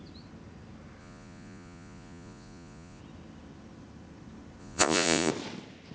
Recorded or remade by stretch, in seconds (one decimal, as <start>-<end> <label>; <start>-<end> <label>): 0.0-1.0 recorded; 1.0-3.0 remade; 3.0-4.6 recorded; 4.6-5.3 remade; 5.3-5.9 recorded